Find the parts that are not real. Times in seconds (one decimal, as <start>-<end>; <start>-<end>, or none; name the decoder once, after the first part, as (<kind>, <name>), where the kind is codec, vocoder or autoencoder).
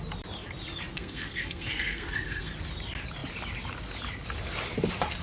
0.9-2.5 (codec, SNAC)